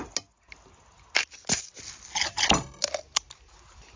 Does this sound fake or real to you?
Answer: real